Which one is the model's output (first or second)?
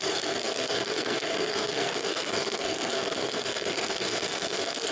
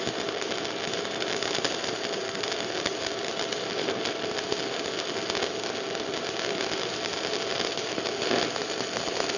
first